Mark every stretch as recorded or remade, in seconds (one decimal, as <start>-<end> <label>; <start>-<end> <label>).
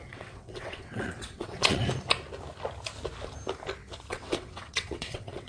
0.0-1.8 remade; 1.8-4.1 recorded; 4.1-5.5 remade